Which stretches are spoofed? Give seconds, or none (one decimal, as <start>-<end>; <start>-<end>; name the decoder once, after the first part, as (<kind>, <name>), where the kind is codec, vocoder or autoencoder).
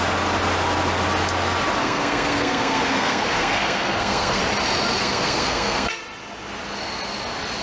1.8-4.4 (codec, SNAC); 5.0-6.0